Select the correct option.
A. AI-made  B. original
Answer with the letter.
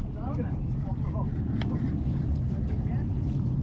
B